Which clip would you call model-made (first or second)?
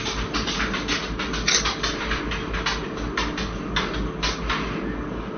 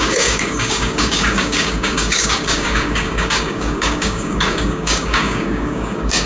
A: second